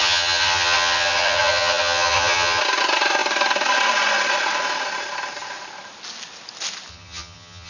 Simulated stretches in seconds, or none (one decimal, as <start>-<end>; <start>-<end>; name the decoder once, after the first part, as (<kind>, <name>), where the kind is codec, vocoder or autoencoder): 0.0-2.6 (vocoder, HiFi-GAN); 6.9-7.7